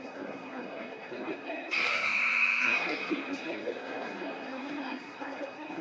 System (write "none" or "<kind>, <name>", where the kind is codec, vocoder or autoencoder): codec, SNAC